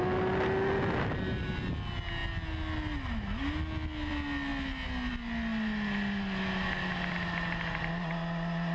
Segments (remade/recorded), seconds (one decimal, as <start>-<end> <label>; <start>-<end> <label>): 0.0-8.7 recorded